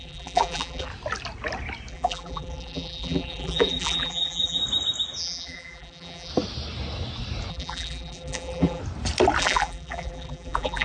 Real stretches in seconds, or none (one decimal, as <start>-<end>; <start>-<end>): 0.9-1.9; 4.6-5.2; 6.3-7.5; 8.8-9.4